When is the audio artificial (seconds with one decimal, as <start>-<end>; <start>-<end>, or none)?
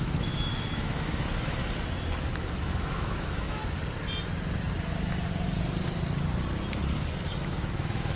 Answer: 0.0-1.6; 2.3-3.6; 7.4-8.2